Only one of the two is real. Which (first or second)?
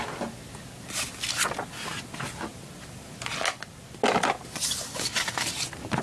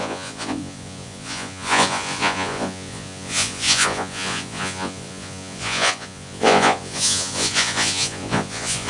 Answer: first